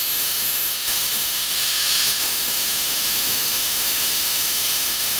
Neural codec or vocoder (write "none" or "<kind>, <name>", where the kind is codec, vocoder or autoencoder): autoencoder, DAC-VAE